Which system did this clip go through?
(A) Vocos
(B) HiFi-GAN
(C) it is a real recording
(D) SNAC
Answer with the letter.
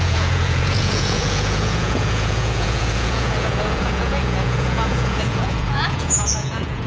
A